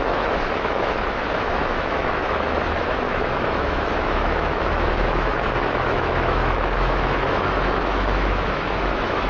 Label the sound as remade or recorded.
remade